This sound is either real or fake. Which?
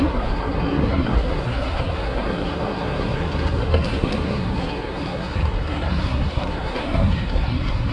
fake